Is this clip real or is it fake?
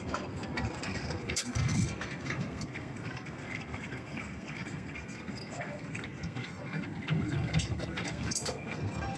fake